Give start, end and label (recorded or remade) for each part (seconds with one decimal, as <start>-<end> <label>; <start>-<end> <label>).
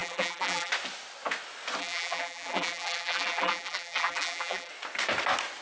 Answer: 0.0-0.7 remade; 0.7-1.8 recorded; 1.8-4.7 remade; 4.7-5.6 recorded